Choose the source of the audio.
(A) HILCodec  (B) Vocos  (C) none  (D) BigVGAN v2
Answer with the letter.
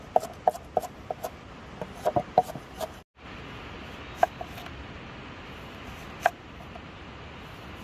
C